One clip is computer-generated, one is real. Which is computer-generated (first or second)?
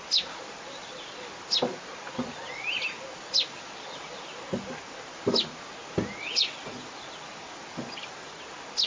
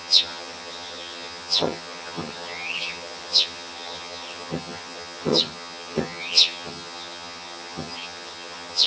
second